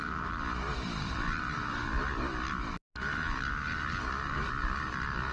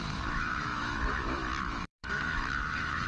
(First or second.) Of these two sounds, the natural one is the first